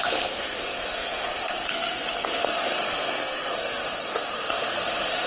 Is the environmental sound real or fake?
fake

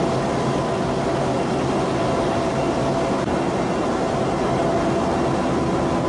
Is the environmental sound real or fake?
real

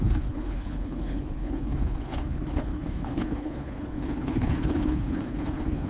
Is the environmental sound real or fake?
fake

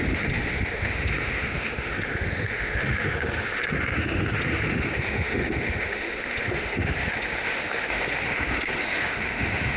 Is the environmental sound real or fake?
fake